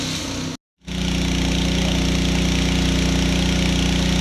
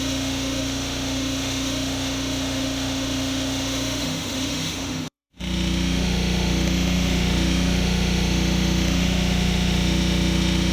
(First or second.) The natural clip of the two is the first